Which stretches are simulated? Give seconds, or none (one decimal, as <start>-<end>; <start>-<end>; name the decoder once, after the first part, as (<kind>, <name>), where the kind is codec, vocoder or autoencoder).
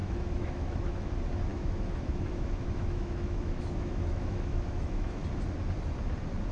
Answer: 0.0-1.1 (autoencoder, DAC-VAE); 1.5-5.2